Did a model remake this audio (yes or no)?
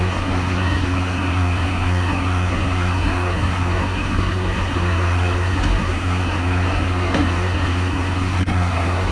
yes